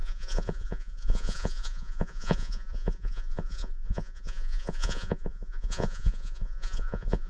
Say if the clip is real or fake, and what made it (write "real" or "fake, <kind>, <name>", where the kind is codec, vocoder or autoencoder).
fake, vocoder, Vocos